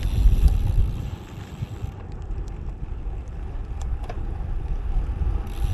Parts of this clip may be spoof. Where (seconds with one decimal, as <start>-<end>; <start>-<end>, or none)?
0.8-3.0; 3.6-4.9